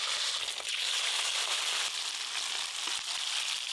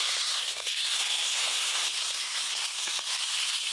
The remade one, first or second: second